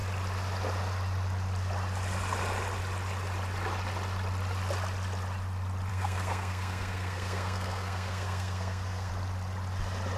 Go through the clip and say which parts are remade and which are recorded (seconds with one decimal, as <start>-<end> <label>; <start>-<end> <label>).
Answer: 0.0-5.9 recorded; 5.9-9.1 remade; 9.1-10.2 recorded